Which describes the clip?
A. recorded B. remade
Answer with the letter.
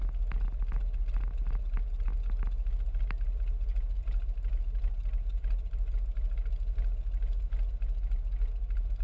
A